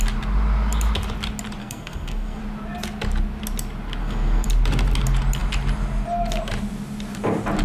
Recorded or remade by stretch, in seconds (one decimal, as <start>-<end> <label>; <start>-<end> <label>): 0.0-1.6 recorded; 1.6-2.4 remade; 2.4-4.0 recorded; 4.0-4.5 remade; 4.5-7.6 recorded